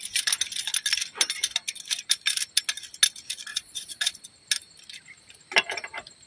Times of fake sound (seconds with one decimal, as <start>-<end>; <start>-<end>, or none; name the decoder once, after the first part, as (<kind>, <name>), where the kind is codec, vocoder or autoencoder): 3.5-4.2 (vocoder, Vocos)